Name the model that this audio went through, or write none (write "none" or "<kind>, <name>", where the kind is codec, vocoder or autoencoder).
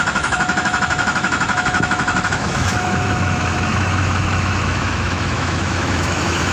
autoencoder, DAC-VAE